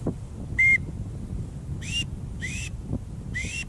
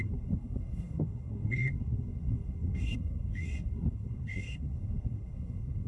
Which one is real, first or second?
first